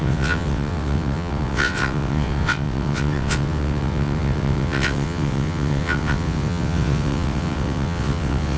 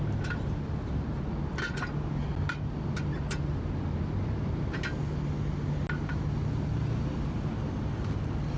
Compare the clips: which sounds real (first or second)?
second